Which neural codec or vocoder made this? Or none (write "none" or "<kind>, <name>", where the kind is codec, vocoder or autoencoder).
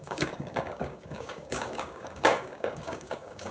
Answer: codec, DAC